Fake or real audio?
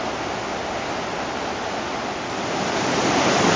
real